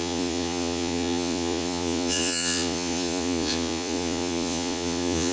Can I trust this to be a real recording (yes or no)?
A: no